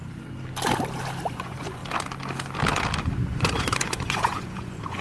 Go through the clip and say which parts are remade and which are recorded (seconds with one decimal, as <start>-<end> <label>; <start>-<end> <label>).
0.0-1.3 recorded; 1.3-1.8 remade; 1.8-3.0 recorded; 3.0-5.0 remade